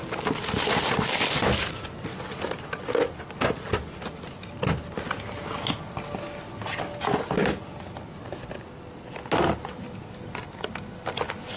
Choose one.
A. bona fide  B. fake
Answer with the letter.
A